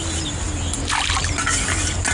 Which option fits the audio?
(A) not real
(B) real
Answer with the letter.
B